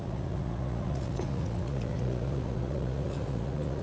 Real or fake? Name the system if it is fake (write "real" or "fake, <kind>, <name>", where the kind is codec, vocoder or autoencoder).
fake, vocoder, Vocos